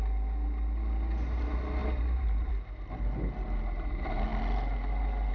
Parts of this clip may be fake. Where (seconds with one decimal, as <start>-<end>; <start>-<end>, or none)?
1.8-2.5